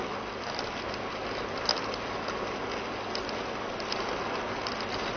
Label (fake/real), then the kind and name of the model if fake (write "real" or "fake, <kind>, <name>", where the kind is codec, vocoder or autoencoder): real